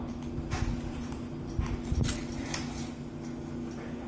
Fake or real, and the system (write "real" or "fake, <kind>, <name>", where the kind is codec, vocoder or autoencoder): real